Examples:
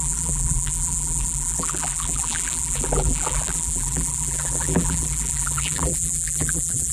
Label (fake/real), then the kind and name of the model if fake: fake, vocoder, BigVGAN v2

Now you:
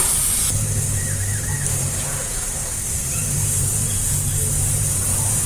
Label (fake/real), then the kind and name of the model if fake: fake, vocoder, BigVGAN v2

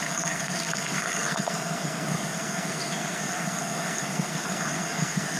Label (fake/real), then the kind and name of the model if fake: fake, codec, SNAC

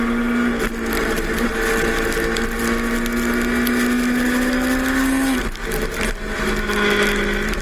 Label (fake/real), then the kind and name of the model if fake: real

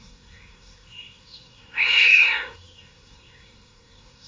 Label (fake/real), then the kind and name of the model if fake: fake, codec, SNAC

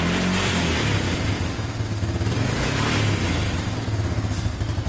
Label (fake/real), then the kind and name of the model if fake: real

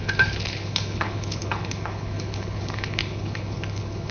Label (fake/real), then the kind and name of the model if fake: fake, codec, HILCodec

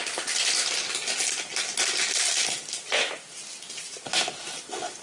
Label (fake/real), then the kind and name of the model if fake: real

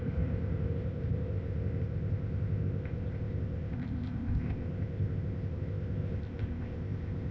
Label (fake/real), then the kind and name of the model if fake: fake, codec, ZipCodec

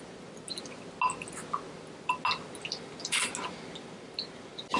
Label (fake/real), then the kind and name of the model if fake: real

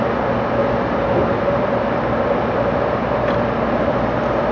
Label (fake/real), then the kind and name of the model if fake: real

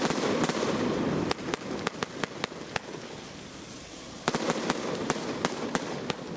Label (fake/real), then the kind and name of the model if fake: real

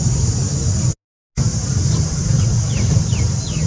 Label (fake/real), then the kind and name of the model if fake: real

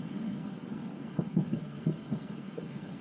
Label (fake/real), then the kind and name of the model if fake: fake, codec, SNAC